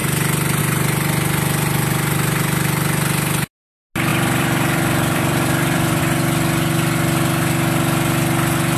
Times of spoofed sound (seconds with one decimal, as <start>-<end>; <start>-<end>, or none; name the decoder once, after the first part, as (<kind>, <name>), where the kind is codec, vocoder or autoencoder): 4.1-6.0 (vocoder, BigVGAN v2)